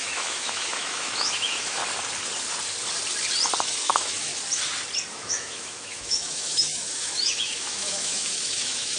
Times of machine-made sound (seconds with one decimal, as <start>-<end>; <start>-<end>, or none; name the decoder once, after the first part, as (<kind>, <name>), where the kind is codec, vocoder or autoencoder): 0.0-1.8 (autoencoder, DAC-VAE); 3.6-4.3; 5.1-9.0